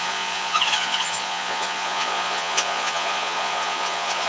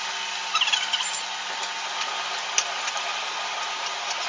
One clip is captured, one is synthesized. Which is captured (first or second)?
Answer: second